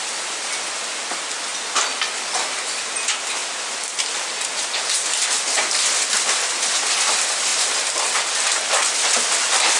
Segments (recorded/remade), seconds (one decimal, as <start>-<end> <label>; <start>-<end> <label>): 0.0-9.8 recorded